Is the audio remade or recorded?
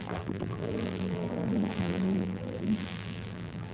remade